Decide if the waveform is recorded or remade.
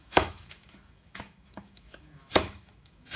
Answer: remade